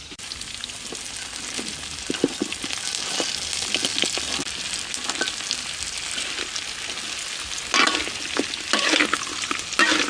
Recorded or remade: recorded